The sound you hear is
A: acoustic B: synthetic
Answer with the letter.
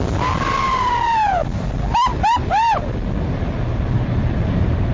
A